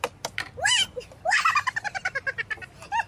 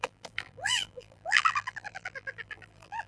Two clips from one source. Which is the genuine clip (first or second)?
first